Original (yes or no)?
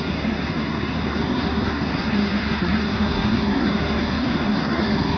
no